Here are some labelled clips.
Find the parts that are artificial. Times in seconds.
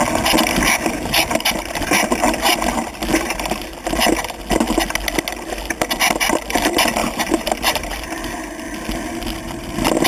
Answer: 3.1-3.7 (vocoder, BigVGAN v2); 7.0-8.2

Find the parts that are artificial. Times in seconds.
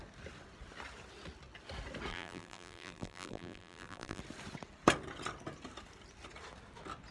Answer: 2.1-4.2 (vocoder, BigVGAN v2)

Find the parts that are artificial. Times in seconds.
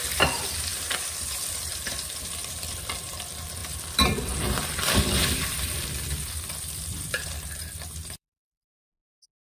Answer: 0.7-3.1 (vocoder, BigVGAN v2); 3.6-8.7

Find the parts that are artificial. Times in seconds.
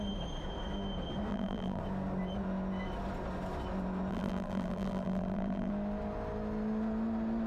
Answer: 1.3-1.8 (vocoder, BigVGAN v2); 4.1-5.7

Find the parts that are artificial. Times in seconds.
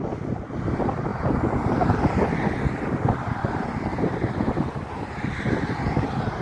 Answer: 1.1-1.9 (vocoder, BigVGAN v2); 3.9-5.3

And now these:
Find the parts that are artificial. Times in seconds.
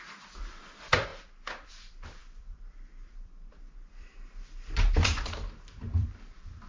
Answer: 0.0-6.7 (vocoder, BigVGAN v2)